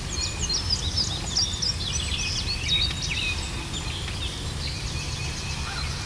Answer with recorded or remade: recorded